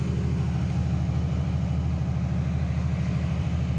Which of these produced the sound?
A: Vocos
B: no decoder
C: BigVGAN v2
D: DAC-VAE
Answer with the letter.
B